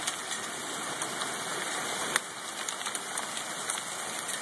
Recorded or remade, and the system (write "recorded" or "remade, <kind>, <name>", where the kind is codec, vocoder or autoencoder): recorded